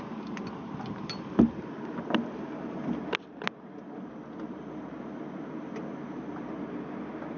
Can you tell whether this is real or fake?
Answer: real